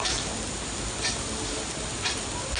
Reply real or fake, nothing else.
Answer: real